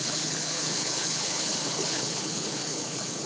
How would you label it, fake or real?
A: fake